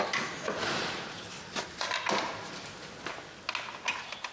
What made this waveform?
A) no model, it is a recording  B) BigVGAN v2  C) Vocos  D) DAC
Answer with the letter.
A